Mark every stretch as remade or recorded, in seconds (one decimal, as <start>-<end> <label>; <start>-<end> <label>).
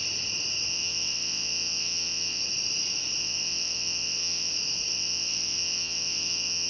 0.0-0.7 recorded; 0.7-2.4 remade; 2.4-3.2 recorded; 3.2-4.5 remade; 4.5-4.9 recorded; 4.9-6.7 remade